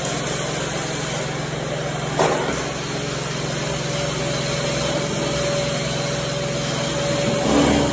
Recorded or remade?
recorded